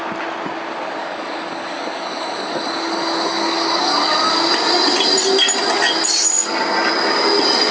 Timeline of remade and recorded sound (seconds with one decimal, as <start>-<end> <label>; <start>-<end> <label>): 0.0-1.0 recorded; 1.0-4.3 remade; 4.3-7.7 recorded